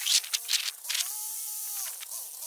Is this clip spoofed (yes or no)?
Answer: no